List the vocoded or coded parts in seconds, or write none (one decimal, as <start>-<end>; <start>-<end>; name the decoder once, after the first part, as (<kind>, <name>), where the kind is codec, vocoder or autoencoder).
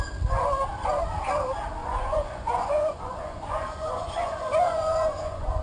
1.8-5.6 (vocoder, Vocos)